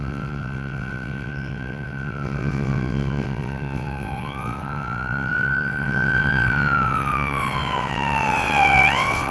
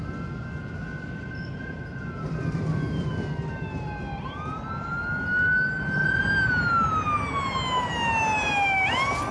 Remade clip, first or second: first